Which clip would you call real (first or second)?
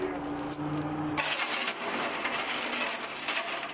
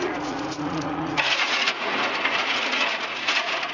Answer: first